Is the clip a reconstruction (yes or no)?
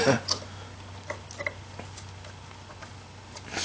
no